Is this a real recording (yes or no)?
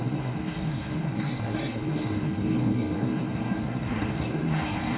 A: no